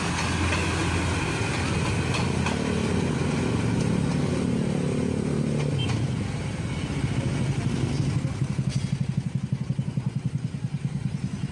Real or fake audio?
real